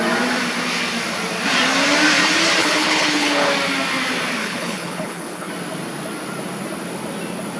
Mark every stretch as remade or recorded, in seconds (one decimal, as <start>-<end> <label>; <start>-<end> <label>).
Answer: 0.0-2.6 recorded; 2.6-3.5 remade; 3.5-4.4 recorded; 4.4-5.5 remade; 5.5-7.6 recorded